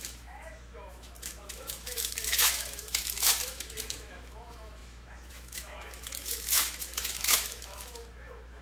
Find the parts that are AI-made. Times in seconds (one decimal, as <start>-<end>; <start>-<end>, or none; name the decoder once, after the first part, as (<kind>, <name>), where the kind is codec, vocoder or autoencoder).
0.0-8.6 (autoencoder, DAC-VAE)